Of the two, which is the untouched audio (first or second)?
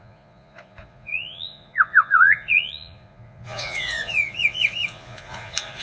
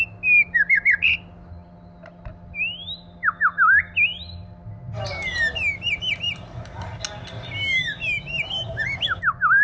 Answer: second